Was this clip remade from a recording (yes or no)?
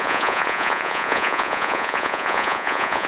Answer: yes